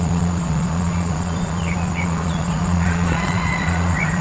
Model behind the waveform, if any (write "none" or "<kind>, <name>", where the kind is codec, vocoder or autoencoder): vocoder, Vocos